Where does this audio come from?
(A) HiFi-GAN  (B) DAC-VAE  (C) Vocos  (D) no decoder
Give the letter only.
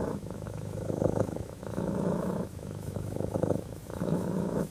B